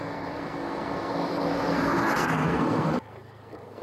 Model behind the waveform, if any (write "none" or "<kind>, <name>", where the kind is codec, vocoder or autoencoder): codec, SNAC